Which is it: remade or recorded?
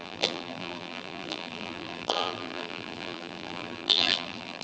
remade